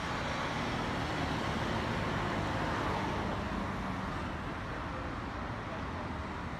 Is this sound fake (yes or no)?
no